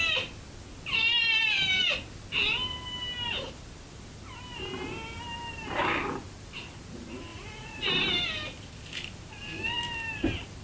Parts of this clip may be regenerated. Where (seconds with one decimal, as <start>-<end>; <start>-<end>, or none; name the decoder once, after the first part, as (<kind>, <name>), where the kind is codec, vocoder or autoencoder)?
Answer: 7.3-7.9 (vocoder, Vocos)